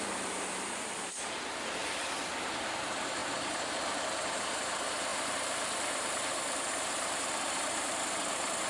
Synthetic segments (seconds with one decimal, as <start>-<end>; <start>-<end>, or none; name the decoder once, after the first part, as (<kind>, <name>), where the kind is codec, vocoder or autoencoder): 0.0-1.8 (vocoder, BigVGAN v2); 2.5-8.7